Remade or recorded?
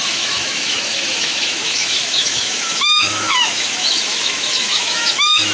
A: remade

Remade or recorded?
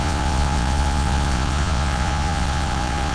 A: remade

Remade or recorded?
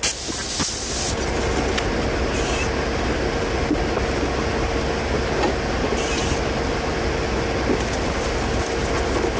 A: recorded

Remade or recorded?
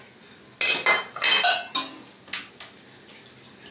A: recorded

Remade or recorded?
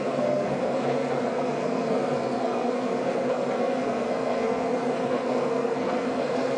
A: remade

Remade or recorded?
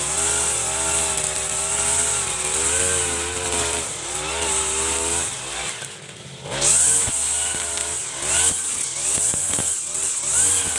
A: recorded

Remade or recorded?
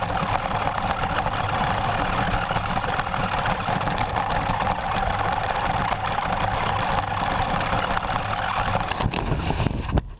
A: recorded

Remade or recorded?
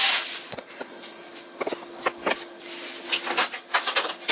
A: recorded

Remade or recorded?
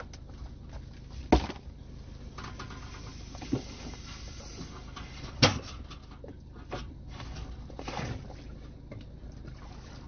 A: recorded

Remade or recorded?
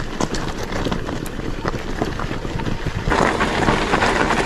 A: recorded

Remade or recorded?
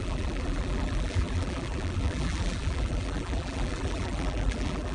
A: remade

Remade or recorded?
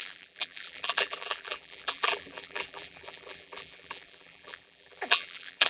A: remade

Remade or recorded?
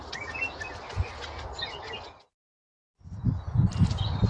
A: recorded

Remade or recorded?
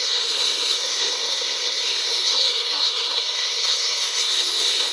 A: remade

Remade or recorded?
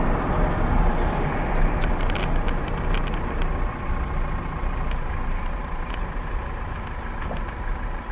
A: remade